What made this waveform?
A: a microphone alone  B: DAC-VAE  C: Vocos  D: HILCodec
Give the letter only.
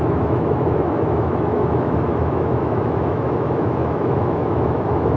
B